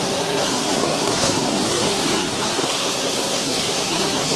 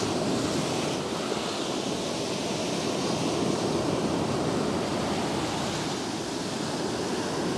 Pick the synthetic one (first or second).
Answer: first